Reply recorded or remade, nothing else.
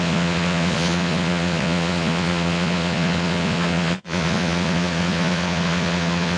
remade